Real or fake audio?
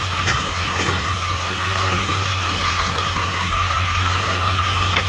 fake